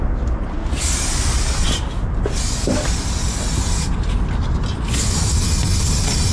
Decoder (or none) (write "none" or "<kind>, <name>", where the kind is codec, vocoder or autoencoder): none